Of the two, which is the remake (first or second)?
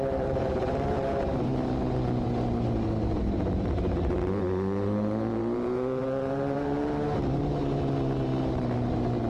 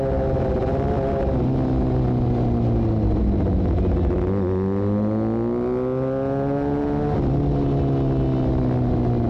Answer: first